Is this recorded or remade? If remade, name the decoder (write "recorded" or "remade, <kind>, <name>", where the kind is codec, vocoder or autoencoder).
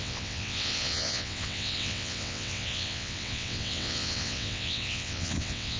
remade, vocoder, WaveNeXt